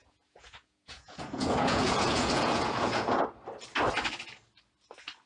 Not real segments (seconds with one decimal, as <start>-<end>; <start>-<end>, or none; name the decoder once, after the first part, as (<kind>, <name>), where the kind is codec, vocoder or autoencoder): 0.0-3.2 (vocoder, Vocos)